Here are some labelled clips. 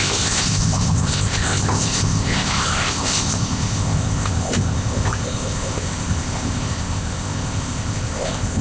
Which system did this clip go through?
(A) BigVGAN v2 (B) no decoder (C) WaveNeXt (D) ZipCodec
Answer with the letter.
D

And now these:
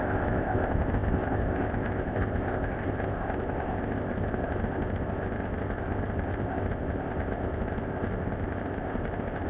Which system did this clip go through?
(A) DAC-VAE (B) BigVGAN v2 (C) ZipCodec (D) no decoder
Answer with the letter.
C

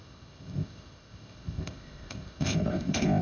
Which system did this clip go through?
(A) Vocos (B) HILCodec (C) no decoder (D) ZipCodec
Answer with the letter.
D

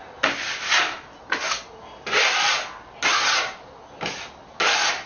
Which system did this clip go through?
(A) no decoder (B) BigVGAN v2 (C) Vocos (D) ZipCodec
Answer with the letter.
A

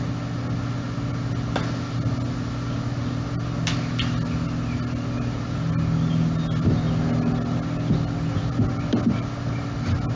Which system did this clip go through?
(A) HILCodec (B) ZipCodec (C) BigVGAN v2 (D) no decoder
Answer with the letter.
D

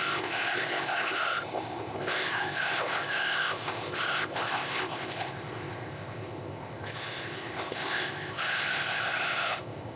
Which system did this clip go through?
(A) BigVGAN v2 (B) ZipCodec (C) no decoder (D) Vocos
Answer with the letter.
B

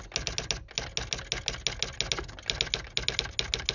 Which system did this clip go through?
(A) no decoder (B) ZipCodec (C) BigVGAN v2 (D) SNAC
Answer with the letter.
A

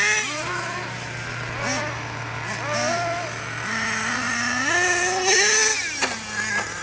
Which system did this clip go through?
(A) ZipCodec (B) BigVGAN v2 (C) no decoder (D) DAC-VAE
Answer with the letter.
C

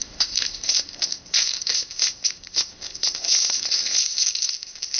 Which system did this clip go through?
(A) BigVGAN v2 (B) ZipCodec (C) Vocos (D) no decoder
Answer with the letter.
B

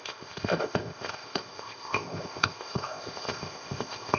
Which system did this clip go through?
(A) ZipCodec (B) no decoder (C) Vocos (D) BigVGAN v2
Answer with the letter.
A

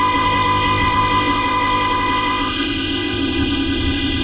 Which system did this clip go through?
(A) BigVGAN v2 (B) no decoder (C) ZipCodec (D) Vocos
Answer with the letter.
C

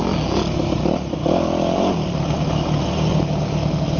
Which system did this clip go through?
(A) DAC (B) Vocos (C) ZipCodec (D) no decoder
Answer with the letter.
D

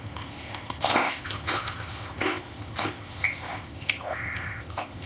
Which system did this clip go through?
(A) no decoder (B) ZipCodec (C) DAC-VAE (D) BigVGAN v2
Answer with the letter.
B